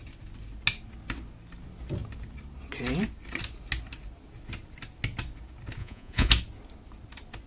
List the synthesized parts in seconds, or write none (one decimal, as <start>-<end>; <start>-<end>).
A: 5.8-6.3